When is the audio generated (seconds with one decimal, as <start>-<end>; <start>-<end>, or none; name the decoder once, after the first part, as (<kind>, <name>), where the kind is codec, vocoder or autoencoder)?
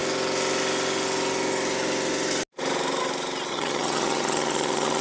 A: 3.5-5.0 (vocoder, HiFi-GAN)